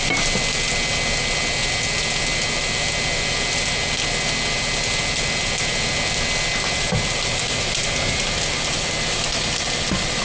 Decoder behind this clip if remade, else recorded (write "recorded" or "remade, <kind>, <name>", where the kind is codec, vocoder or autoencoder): recorded